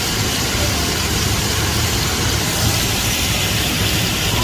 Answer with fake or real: fake